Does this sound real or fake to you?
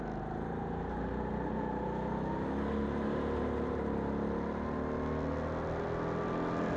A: real